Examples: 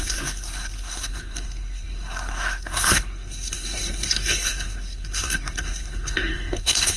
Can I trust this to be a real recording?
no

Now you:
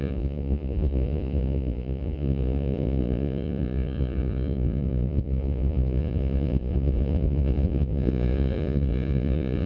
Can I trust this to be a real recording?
no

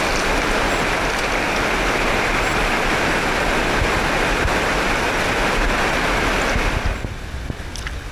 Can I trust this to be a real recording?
yes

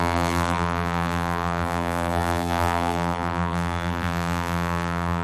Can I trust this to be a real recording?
no